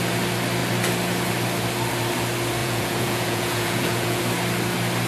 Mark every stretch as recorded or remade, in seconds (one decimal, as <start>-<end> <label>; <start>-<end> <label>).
0.0-2.6 recorded; 2.6-4.2 remade; 4.2-5.1 recorded

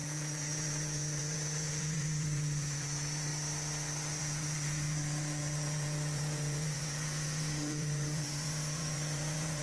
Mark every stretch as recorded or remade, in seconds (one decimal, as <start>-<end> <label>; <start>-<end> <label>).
0.0-3.3 remade; 3.3-4.2 recorded; 4.2-9.6 remade

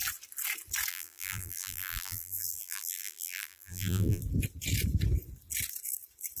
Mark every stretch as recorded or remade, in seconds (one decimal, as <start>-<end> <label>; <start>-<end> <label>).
0.0-0.9 recorded; 0.9-4.2 remade; 4.2-6.4 recorded

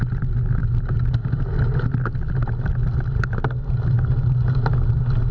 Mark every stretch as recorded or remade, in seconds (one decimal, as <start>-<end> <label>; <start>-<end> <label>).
0.0-5.3 recorded

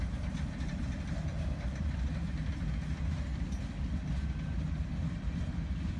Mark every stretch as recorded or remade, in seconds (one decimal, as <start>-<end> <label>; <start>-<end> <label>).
0.0-6.0 recorded

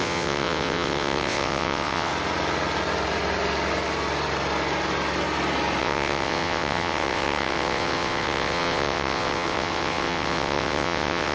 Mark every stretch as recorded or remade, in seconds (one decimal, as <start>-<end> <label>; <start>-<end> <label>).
0.0-2.1 remade; 2.1-5.8 recorded; 5.8-11.3 remade